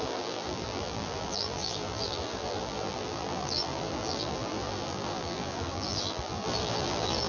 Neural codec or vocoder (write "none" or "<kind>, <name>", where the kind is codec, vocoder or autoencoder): vocoder, BigVGAN v2